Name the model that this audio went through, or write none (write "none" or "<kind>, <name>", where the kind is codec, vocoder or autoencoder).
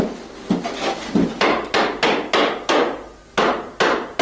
none